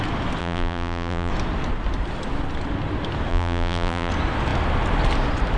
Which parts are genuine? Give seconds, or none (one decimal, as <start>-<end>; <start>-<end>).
0.0-0.4; 1.3-3.3; 4.1-5.6